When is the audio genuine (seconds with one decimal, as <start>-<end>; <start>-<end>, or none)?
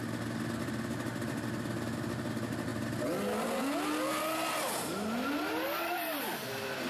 0.0-6.9